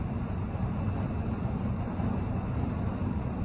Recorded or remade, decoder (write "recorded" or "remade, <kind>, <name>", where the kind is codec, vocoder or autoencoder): recorded